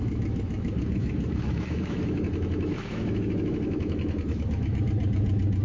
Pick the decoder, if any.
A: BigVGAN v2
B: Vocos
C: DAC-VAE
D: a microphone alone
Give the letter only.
C